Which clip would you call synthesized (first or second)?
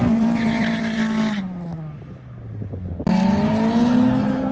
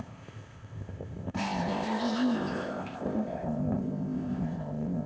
second